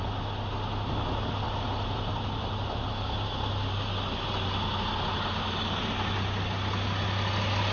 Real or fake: real